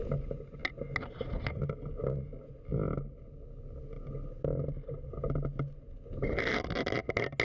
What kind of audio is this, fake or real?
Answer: real